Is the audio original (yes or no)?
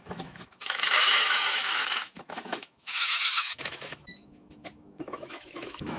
no